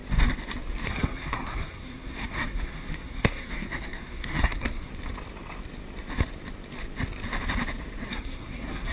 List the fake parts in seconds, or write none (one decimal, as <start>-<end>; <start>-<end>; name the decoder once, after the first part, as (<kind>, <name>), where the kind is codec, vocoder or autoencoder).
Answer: 0.9-4.9 (codec, SNAC); 8.1-8.9